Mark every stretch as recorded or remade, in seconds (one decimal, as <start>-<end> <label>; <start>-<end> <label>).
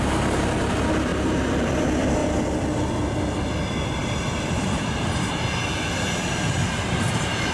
0.0-4.0 recorded; 4.0-5.4 remade; 5.4-7.5 recorded